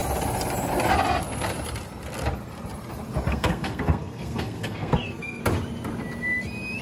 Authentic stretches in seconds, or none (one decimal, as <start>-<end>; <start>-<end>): 0.0-3.3; 5.4-6.8